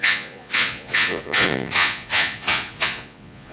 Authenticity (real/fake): fake